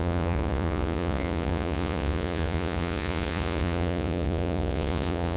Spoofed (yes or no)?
yes